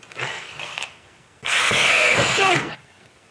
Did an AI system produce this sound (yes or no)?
yes